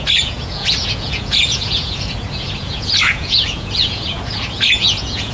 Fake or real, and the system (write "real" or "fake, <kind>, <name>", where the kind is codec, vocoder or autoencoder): fake, vocoder, Vocos